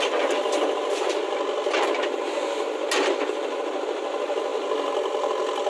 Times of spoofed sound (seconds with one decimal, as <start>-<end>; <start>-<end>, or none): none